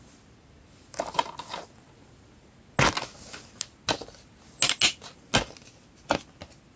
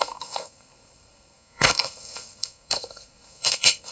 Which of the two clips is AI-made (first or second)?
second